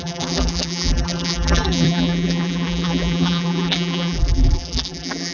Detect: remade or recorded remade